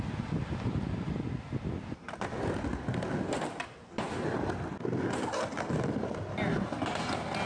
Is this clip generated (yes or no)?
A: no